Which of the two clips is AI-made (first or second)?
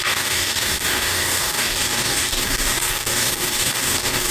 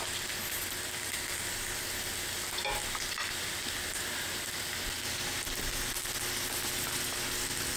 first